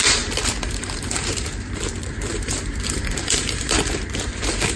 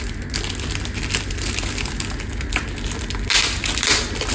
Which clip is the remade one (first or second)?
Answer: first